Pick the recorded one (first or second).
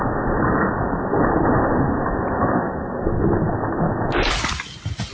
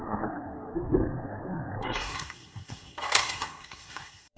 first